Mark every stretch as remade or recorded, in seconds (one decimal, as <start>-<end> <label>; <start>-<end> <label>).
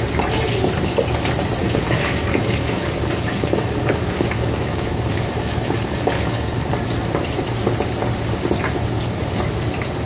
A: 0.0-1.6 recorded; 1.6-6.7 remade; 6.7-10.1 recorded